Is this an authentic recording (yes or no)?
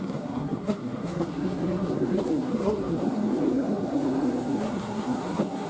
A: no